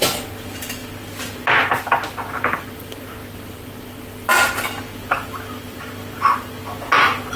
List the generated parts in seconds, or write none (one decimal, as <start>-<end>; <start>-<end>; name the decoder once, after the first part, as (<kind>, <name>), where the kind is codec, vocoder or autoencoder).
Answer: none